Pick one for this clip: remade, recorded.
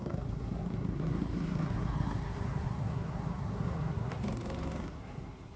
remade